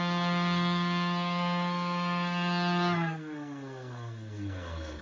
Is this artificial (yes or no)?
yes